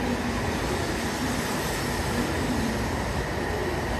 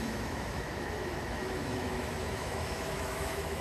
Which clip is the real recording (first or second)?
first